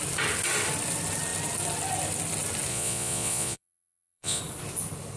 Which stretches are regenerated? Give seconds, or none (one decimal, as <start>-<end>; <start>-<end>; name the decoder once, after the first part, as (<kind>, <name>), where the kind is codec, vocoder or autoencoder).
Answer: 2.7-4.4 (vocoder, Vocos)